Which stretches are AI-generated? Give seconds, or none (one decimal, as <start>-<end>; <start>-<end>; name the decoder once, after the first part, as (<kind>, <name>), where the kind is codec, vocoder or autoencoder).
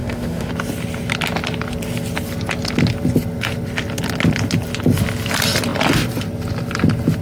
0.0-0.5 (autoencoder, DAC-VAE)